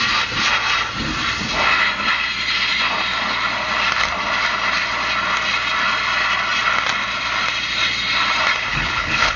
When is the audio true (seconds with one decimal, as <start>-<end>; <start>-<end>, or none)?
0.0-8.7